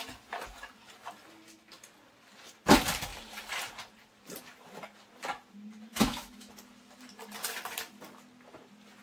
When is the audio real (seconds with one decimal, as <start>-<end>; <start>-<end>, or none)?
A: 0.0-5.9; 6.5-9.0